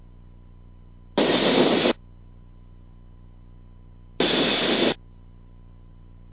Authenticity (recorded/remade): recorded